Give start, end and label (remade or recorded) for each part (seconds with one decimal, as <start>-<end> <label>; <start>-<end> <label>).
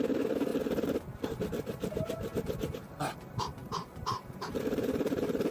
0.0-3.6 recorded; 3.6-5.5 remade